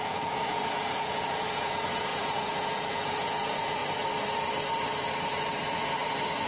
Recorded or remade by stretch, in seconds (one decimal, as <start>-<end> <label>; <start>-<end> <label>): 0.0-3.8 remade; 3.8-6.5 recorded